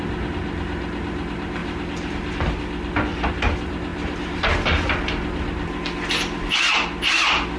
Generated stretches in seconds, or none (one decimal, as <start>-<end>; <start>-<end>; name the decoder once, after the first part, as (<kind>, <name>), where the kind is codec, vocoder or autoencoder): 1.6-3.3 (vocoder, BigVGAN v2)